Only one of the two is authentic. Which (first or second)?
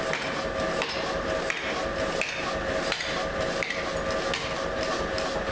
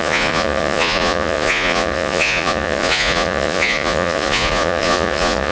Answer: first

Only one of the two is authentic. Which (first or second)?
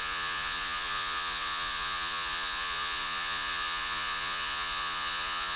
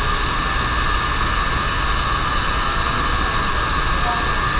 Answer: second